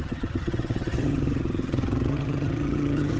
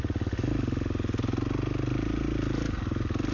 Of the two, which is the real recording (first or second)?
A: second